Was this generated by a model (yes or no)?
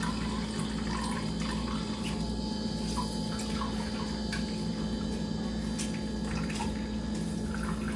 no